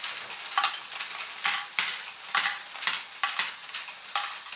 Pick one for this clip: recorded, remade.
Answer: recorded